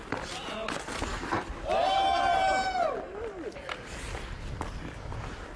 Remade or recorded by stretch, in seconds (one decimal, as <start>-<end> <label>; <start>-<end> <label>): 0.0-5.6 recorded